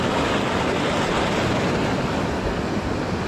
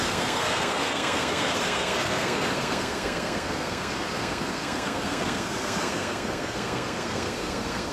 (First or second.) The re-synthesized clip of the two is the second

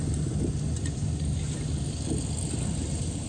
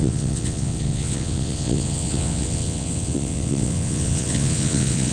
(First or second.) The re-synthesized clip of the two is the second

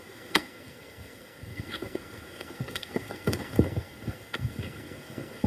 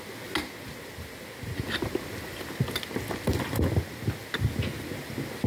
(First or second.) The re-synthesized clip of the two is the first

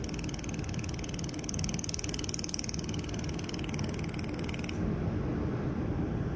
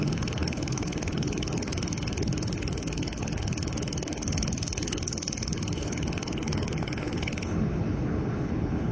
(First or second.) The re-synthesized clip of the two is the second